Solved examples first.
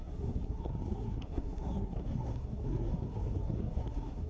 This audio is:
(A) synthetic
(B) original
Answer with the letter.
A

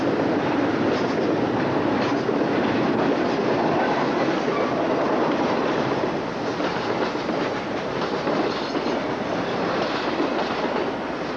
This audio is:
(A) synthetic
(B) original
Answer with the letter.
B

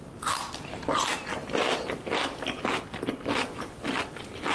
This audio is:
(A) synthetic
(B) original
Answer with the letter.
B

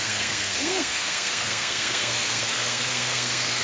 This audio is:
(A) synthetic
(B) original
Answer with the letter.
A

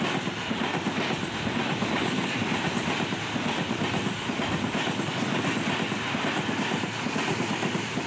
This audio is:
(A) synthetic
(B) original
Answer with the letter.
B